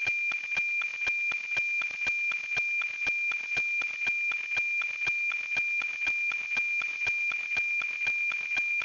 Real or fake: real